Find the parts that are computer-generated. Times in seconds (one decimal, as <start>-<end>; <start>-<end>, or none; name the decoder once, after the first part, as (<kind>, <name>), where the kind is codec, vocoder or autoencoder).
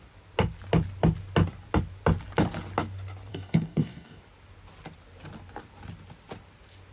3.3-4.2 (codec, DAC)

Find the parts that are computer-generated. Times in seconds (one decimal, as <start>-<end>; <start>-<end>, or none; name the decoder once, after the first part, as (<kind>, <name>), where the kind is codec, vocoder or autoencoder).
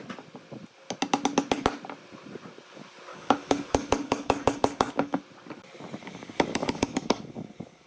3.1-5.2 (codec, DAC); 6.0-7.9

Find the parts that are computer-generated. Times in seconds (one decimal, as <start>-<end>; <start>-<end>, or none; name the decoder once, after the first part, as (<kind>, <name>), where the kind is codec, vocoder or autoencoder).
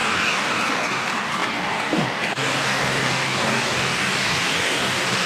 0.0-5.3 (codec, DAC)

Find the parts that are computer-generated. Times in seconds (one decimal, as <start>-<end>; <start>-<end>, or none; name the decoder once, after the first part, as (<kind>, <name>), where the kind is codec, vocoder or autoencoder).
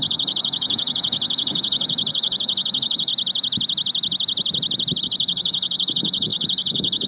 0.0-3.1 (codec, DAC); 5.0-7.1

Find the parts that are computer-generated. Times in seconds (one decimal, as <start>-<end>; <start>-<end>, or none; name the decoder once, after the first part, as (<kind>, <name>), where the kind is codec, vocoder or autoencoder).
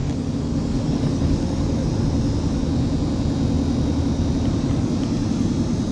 0.0-1.9 (codec, DAC)